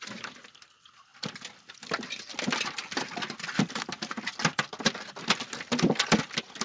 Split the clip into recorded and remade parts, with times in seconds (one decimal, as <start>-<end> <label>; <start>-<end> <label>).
0.0-6.6 recorded